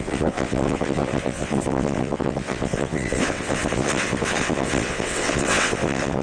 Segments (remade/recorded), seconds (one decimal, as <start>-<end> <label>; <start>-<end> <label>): 0.0-6.2 remade

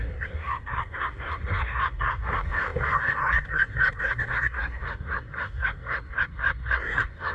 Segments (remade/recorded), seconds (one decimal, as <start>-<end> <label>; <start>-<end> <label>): 0.0-7.3 remade

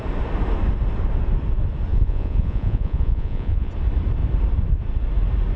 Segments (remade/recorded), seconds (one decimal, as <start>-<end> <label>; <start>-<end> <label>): 0.0-1.9 recorded; 1.9-3.7 remade; 3.7-5.6 recorded

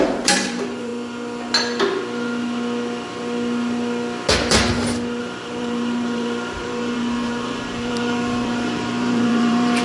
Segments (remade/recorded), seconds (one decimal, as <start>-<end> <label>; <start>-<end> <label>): 0.0-0.9 remade; 0.9-5.2 recorded; 5.2-9.8 remade

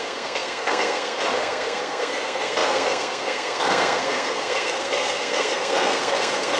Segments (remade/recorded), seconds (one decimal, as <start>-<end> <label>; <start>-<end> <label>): 0.0-6.6 remade

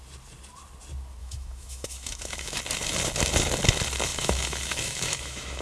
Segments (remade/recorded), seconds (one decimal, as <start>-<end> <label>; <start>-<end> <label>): 0.0-1.2 recorded; 1.2-2.6 remade; 2.6-4.1 recorded; 4.1-5.6 remade

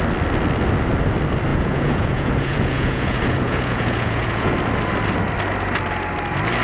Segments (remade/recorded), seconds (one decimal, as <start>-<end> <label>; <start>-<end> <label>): 0.0-1.5 recorded; 1.5-4.5 remade; 4.5-6.6 recorded

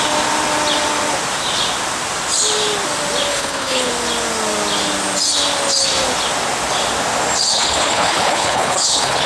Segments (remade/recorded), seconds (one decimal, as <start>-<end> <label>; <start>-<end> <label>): 0.0-3.3 recorded; 3.3-3.9 remade; 3.9-7.5 recorded; 7.5-9.3 remade